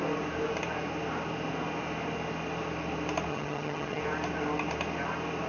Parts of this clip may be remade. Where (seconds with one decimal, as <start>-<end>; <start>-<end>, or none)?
3.3-4.0